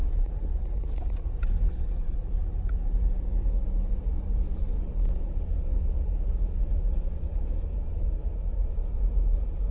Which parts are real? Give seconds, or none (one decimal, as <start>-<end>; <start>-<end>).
0.0-9.7